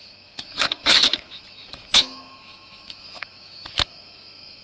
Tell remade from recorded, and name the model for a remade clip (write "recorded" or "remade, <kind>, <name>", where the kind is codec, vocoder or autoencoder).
remade, autoencoder, DAC-VAE